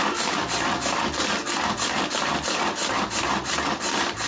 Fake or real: real